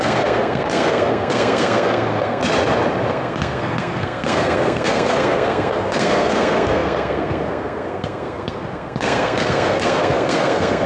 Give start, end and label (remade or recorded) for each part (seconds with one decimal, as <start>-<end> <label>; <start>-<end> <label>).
0.0-2.4 remade; 2.4-3.1 recorded; 3.1-10.9 remade